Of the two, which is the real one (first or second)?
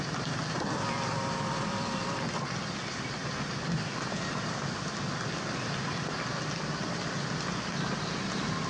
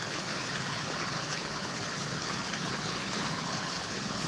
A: first